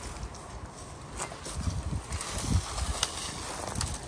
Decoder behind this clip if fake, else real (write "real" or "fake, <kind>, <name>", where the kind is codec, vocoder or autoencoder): real